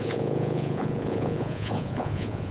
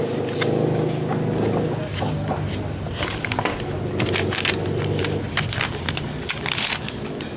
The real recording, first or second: second